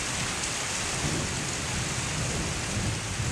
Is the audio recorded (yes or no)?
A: yes